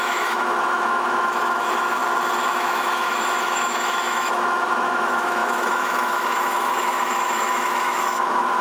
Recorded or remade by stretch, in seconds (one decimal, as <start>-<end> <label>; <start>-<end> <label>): 0.0-2.0 remade; 2.0-2.5 recorded; 2.5-8.6 remade